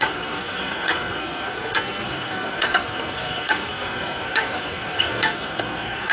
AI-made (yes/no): yes